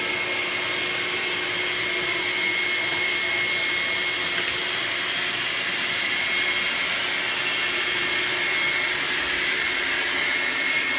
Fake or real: real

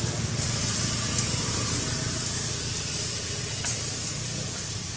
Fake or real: real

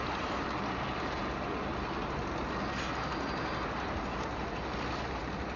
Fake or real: real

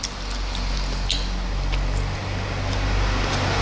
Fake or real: real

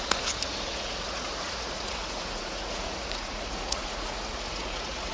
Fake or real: fake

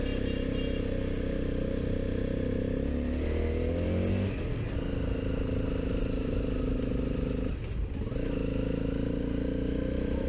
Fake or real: real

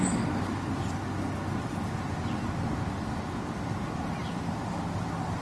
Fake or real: real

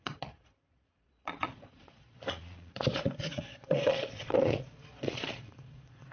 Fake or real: fake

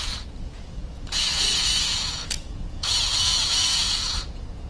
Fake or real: fake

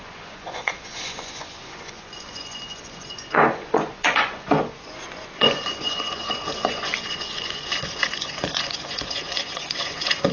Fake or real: fake